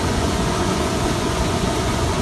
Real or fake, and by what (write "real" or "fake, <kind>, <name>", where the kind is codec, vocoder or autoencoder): fake, vocoder, Vocos